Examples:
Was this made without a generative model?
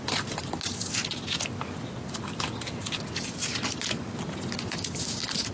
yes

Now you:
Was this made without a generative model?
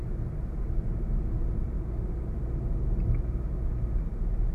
yes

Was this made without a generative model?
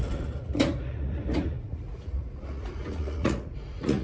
no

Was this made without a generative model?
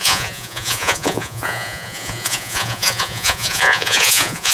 no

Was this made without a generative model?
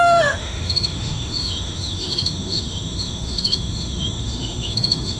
no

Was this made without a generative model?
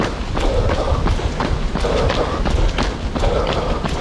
yes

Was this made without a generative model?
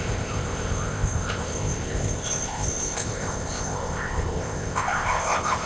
no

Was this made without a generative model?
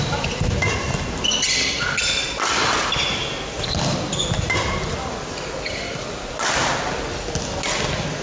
yes